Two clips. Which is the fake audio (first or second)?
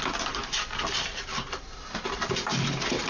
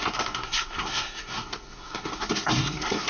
second